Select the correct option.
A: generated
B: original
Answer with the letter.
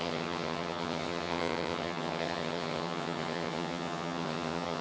A